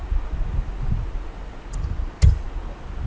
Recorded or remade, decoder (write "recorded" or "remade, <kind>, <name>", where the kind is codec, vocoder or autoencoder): recorded